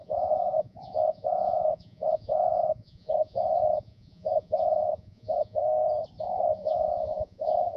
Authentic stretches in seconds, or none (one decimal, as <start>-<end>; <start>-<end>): 5.6-6.2